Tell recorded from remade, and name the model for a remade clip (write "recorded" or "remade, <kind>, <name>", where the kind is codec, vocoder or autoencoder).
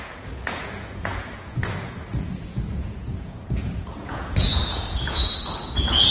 remade, vocoder, Vocos